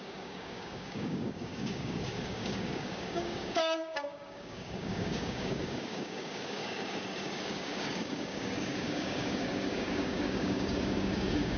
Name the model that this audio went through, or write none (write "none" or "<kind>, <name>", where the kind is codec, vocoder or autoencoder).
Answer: codec, DAC